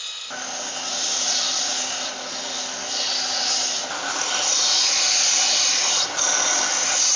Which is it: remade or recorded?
recorded